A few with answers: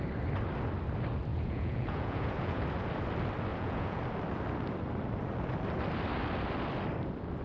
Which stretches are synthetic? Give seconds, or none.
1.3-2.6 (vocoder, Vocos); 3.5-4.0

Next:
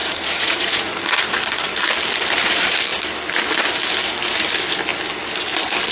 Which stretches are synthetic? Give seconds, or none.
0.0-1.2 (vocoder, Vocos)

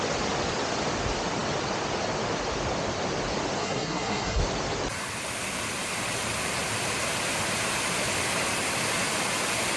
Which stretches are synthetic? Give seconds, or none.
3.6-4.4 (codec, SNAC)

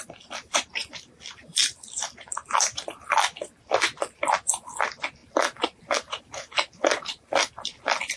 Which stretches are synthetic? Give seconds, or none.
0.0-8.2 (vocoder, BigVGAN v2)

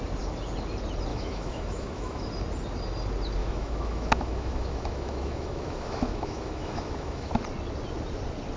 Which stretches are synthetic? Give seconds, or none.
1.1-2.3 (autoencoder, DAC-VAE); 3.4-7.3

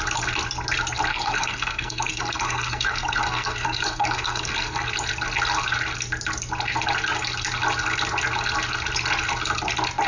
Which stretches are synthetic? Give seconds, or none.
1.1-4.9 (codec, SNAC)